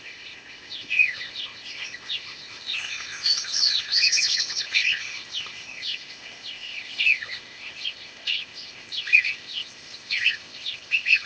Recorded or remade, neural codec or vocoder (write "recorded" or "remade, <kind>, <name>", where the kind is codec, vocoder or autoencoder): remade, codec, ZipCodec